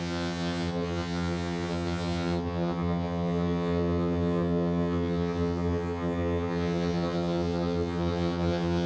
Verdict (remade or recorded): remade